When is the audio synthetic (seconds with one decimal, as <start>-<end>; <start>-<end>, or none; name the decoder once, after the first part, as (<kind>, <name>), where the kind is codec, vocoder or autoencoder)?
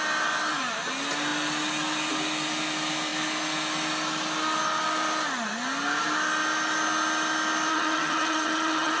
7.7-9.0 (vocoder, HiFi-GAN)